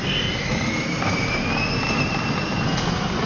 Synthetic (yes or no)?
no